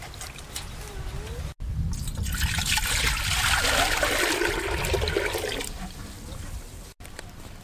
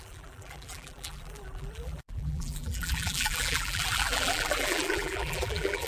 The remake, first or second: second